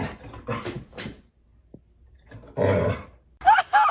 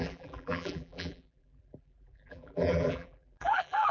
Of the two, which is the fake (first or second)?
second